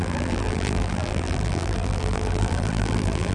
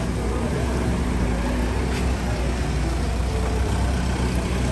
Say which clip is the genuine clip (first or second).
second